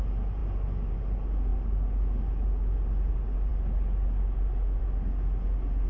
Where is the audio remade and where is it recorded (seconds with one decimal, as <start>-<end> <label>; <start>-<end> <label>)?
0.0-5.9 recorded